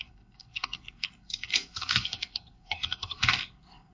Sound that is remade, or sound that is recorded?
remade